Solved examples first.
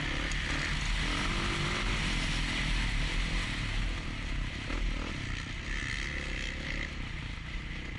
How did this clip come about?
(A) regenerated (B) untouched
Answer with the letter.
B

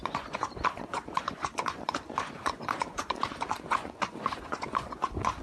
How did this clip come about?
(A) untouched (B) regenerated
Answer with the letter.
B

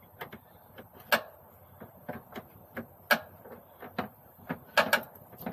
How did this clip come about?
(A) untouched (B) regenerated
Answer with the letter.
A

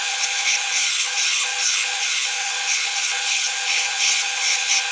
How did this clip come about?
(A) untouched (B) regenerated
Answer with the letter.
B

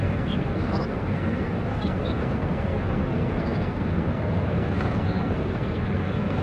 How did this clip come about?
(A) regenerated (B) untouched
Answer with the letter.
A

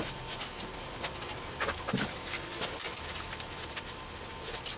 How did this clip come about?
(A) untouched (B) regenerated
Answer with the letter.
A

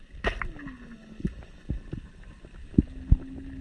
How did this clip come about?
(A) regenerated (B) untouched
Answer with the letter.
B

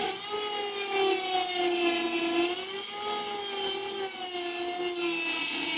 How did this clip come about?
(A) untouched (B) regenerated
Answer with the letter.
A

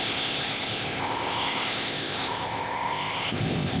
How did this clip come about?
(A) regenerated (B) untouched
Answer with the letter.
A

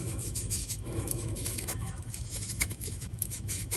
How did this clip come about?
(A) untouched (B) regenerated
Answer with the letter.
B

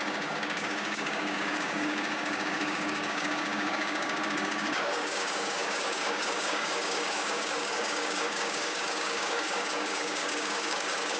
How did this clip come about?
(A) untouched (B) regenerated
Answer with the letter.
B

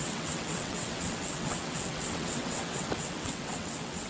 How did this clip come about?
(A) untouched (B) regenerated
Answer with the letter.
B